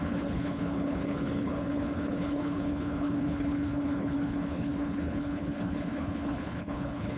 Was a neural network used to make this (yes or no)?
yes